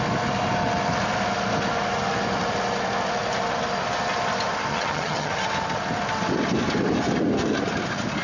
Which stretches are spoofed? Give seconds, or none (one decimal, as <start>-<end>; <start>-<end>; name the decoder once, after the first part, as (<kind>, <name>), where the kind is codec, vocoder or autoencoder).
4.7-5.3 (vocoder, HiFi-GAN)